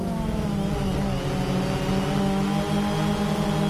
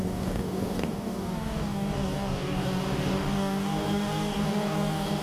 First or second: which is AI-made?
second